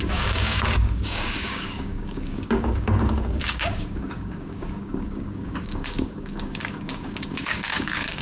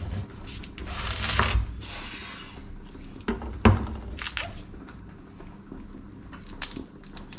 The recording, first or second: second